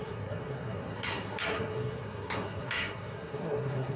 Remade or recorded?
remade